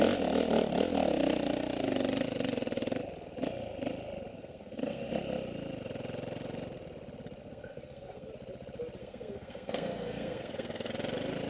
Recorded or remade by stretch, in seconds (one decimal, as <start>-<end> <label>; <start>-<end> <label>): 0.0-4.3 recorded; 4.3-5.1 remade; 5.1-7.4 recorded; 7.4-8.3 remade; 8.3-9.0 recorded; 9.0-10.9 remade; 10.9-11.5 recorded